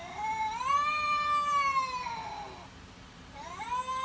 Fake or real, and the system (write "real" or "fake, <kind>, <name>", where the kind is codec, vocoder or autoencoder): fake, vocoder, BigVGAN v2